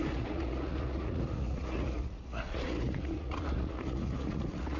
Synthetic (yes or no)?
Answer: yes